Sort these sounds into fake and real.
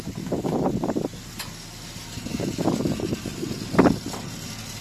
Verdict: real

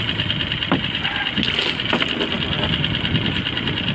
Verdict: real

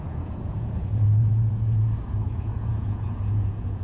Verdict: fake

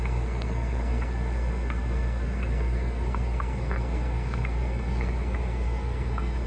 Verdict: fake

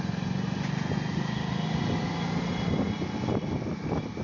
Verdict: real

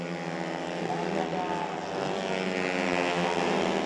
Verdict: real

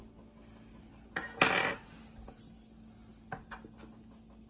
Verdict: real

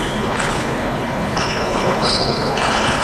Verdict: fake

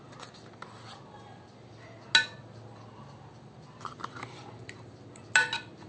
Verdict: real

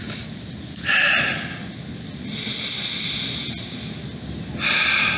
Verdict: real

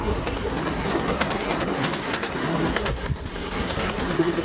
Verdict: fake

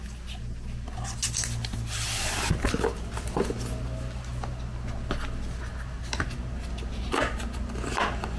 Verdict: real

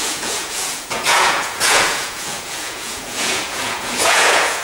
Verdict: fake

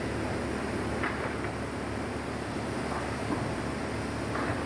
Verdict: real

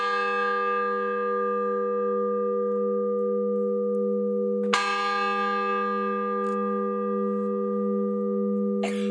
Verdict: real